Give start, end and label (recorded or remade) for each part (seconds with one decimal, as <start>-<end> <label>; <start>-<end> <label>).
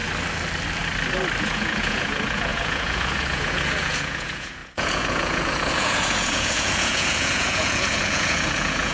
0.0-1.4 recorded; 1.4-8.9 remade